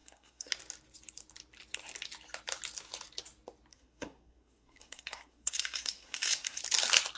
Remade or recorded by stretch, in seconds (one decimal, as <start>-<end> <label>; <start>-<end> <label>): 0.0-0.5 remade; 0.5-3.7 recorded; 3.7-6.6 remade; 6.6-7.2 recorded